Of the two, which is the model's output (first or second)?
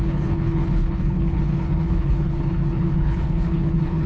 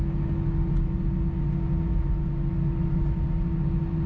first